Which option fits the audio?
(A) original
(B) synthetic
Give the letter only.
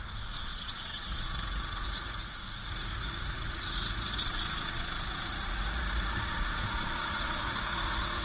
B